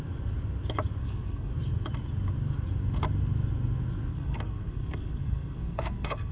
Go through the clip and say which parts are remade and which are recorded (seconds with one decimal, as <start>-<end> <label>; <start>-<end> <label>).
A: 0.0-1.0 recorded; 1.0-1.5 remade; 1.5-4.1 recorded; 4.1-6.3 remade